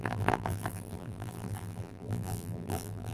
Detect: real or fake fake